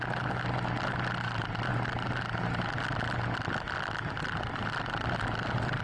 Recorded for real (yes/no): yes